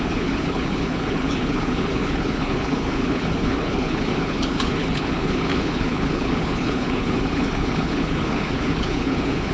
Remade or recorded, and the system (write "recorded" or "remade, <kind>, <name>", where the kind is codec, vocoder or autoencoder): remade, codec, HILCodec